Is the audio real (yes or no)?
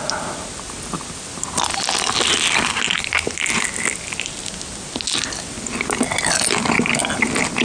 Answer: yes